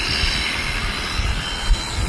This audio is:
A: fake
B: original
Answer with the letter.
A